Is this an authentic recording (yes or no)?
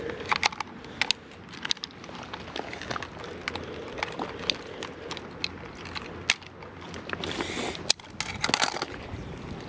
yes